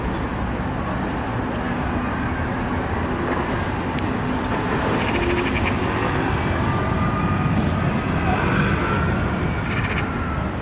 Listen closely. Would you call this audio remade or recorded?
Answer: recorded